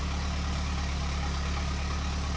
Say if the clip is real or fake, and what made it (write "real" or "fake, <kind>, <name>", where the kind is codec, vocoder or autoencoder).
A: real